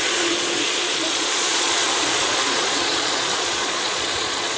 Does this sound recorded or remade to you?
remade